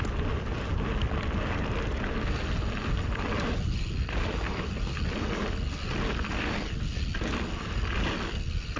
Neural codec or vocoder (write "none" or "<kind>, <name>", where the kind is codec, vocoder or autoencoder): none